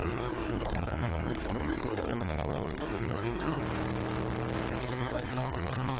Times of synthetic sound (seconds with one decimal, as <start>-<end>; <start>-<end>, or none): 0.0-3.6; 4.8-6.0